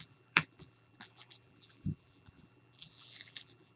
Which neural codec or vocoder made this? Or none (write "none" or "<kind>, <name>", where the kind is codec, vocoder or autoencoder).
vocoder, BigVGAN v2